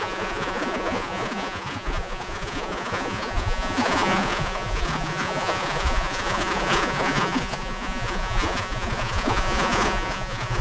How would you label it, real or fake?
fake